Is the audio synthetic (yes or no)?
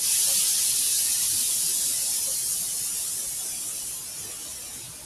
no